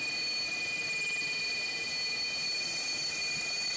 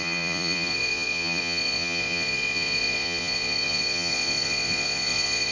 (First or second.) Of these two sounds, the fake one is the second